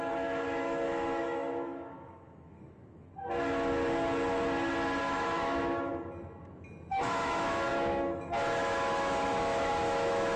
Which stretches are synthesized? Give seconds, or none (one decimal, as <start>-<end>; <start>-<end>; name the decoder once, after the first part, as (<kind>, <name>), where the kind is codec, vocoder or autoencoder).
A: 0.0-3.1 (autoencoder, DAC-VAE); 5.0-5.9; 6.9-10.4

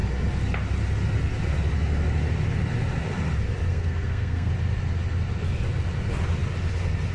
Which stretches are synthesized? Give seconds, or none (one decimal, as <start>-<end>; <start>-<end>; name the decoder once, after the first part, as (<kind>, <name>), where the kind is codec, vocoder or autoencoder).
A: 3.7-4.5 (codec, SNAC)

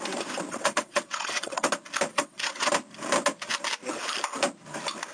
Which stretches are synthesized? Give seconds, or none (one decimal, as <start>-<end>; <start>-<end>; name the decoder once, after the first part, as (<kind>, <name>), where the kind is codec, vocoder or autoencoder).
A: 0.5-1.7 (vocoder, WaveNeXt); 2.1-2.7

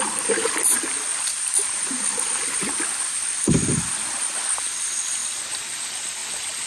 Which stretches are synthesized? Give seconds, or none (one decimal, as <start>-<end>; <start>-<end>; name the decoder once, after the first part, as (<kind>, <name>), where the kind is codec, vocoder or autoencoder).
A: 5.2-5.8 (vocoder, BigVGAN v2); 6.2-6.7